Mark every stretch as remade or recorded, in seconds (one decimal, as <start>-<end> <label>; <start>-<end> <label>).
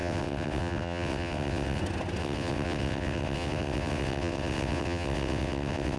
0.0-1.8 remade; 1.8-2.2 recorded; 2.2-6.0 remade